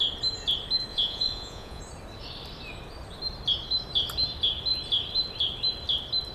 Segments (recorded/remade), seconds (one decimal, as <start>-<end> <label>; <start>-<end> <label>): 0.0-0.9 recorded; 0.9-1.8 remade; 1.8-6.3 recorded

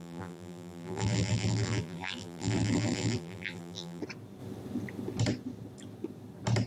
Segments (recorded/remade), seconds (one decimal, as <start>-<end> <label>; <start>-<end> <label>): 0.0-4.0 remade; 4.0-6.7 recorded